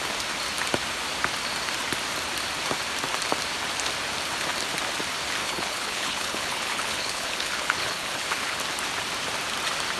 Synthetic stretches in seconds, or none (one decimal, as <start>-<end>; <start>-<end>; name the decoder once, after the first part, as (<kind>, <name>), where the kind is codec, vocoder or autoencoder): 5.4-8.6 (codec, HILCodec)